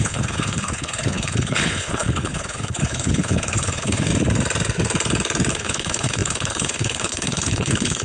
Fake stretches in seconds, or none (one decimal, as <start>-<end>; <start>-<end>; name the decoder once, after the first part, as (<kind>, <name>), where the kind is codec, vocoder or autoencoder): 0.0-4.1 (codec, HILCodec); 5.5-8.0